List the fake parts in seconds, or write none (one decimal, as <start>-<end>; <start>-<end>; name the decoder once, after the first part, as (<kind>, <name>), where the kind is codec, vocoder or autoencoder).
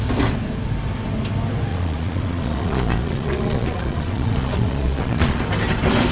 1.7-5.4 (vocoder, Vocos)